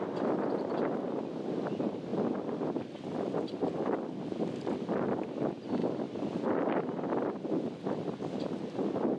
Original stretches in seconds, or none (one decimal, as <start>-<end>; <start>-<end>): 0.0-9.2